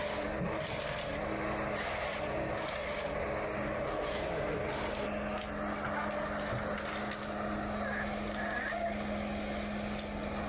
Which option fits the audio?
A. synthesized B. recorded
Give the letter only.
B